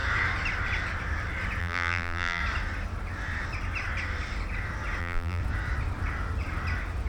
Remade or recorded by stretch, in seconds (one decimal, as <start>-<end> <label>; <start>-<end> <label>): 0.0-1.6 recorded; 1.6-2.4 remade; 2.4-5.0 recorded; 5.0-5.4 remade; 5.4-7.1 recorded